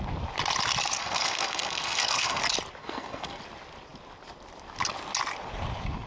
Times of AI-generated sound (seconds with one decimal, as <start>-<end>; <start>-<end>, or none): 1.0-2.4; 2.8-3.4